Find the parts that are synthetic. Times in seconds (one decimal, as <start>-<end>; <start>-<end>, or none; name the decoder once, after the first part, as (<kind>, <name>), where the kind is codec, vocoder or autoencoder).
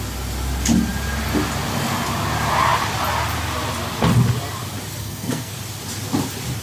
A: 5.0-5.6 (codec, SNAC)